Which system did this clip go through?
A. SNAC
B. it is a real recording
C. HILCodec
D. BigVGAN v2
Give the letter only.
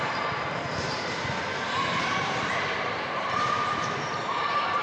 D